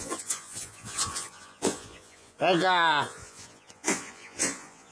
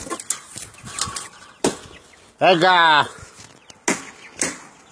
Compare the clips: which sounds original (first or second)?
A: second